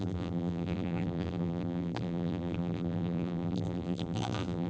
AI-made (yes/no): yes